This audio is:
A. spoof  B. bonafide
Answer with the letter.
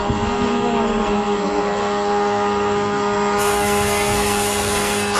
A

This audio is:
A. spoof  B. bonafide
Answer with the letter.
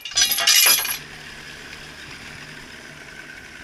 B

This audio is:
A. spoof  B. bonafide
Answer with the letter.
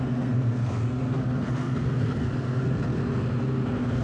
A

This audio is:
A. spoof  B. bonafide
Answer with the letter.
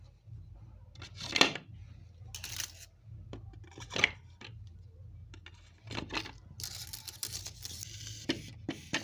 B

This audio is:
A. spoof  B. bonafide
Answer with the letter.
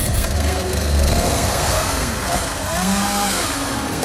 A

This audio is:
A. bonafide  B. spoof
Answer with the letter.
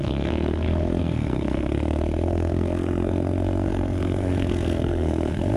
B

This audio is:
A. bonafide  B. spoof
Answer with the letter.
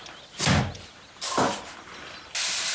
A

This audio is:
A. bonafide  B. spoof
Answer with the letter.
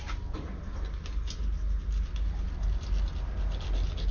A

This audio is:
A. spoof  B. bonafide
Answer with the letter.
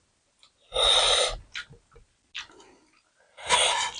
B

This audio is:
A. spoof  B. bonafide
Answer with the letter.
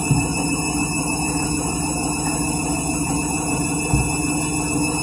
B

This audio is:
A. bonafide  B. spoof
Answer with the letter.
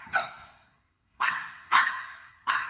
B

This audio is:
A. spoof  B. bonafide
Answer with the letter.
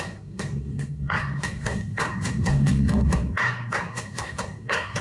A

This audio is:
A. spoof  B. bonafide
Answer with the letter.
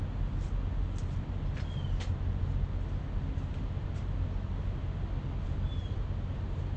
B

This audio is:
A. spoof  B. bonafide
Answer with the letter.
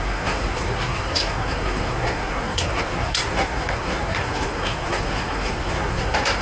A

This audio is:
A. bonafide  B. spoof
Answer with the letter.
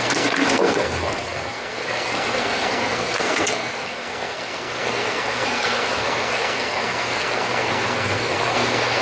B